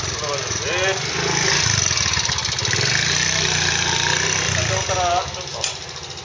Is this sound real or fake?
real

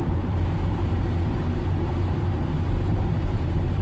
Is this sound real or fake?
fake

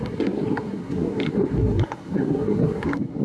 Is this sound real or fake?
fake